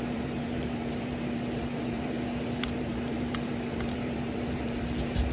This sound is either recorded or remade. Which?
remade